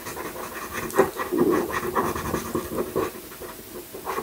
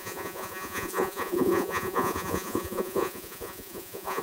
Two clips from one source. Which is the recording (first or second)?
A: first